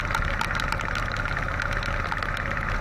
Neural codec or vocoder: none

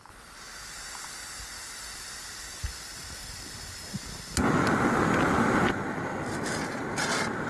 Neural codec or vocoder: none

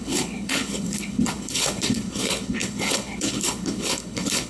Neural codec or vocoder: codec, HILCodec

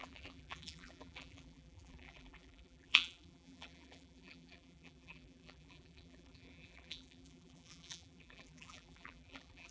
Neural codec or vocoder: vocoder, BigVGAN v2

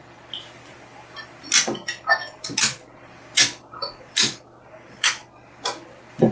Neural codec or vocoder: none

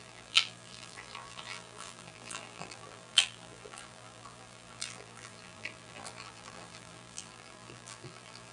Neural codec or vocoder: vocoder, BigVGAN v2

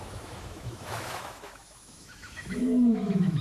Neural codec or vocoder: autoencoder, DAC-VAE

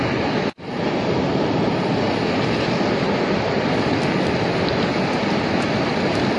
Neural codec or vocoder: vocoder, BigVGAN v2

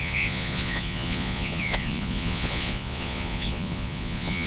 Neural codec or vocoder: vocoder, Vocos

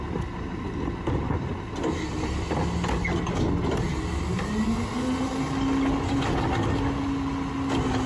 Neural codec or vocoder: none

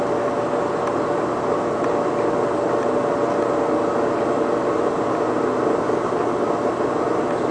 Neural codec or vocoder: none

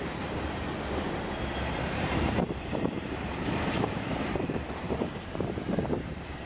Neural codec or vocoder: vocoder, BigVGAN v2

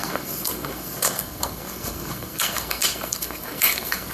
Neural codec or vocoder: codec, SNAC